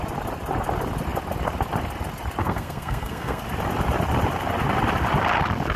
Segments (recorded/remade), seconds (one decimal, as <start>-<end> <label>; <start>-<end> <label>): 0.0-2.4 recorded; 2.4-3.4 remade; 3.4-5.8 recorded